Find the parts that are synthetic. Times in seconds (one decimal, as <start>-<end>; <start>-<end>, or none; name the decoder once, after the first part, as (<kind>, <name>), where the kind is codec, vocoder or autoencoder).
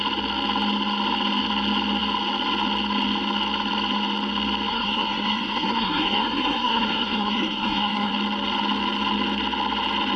4.7-8.1 (codec, SNAC)